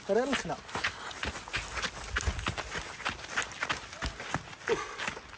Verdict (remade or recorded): recorded